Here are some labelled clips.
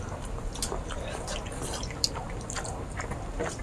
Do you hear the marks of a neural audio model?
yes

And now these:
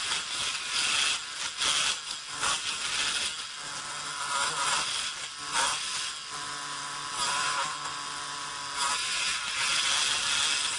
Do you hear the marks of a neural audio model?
no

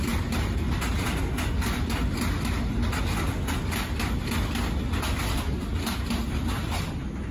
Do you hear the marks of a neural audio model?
no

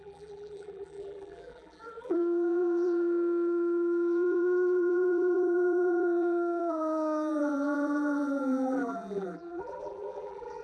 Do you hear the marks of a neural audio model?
yes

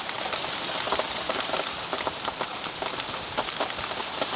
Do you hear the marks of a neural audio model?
yes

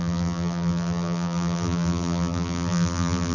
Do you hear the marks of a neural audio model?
yes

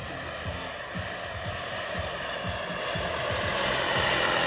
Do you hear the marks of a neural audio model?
no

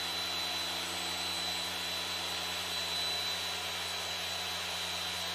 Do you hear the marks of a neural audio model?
no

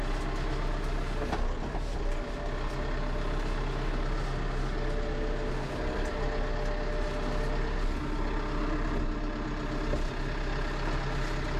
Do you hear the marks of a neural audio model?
no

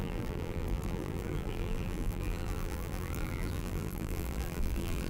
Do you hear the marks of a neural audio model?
yes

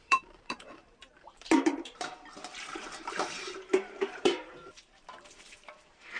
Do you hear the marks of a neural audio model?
yes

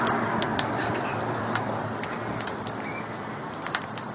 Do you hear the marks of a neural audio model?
yes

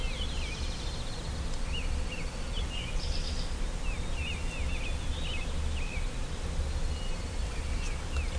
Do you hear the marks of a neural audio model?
no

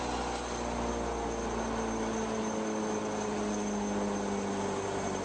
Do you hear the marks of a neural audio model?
no